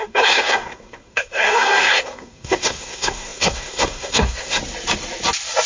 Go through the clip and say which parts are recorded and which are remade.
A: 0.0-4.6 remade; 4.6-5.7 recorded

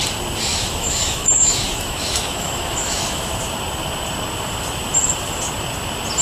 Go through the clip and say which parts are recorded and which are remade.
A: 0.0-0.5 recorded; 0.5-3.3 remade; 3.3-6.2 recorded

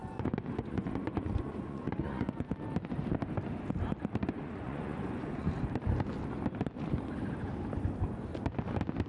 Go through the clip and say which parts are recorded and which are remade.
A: 0.0-2.5 remade; 2.5-4.2 recorded; 4.2-5.5 remade; 5.5-9.1 recorded